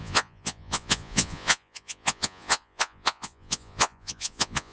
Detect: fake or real fake